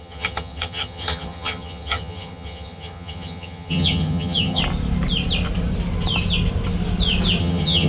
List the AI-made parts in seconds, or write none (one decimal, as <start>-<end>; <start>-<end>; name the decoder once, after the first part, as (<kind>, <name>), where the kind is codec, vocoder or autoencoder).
0.0-4.6 (vocoder, HiFi-GAN); 7.4-7.9